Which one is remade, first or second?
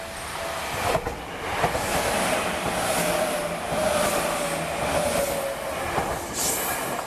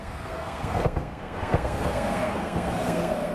second